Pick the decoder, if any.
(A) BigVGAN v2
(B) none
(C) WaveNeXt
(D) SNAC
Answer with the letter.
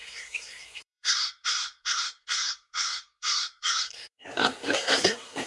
D